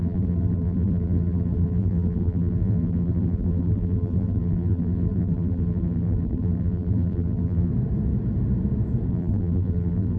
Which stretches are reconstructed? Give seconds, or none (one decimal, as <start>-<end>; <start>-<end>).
0.0-7.7; 9.1-10.2